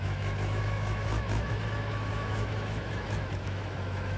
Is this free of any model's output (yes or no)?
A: no